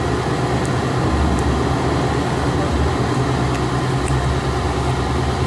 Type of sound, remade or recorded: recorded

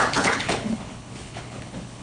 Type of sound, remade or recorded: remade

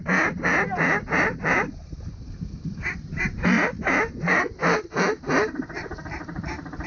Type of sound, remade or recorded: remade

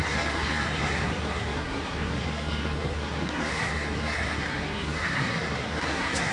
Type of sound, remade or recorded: remade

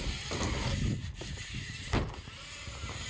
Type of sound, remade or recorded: recorded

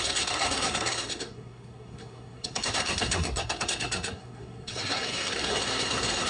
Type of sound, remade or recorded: remade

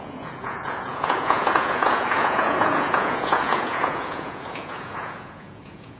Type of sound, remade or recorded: remade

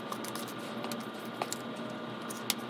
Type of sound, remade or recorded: recorded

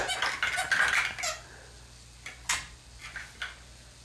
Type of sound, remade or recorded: recorded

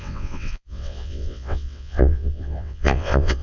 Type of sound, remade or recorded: remade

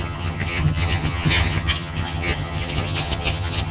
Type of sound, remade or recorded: remade